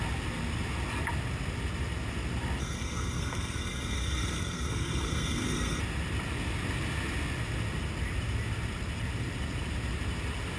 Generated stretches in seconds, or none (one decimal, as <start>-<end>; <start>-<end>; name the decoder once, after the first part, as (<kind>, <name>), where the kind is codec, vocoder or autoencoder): 2.6-5.8 (codec, SNAC)